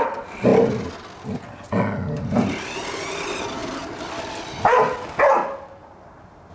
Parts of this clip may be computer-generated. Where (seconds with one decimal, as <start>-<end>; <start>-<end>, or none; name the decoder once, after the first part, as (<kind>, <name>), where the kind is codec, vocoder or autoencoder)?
none